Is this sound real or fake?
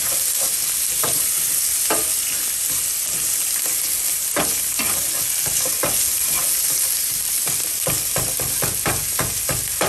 real